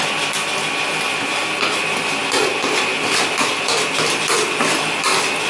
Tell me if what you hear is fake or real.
real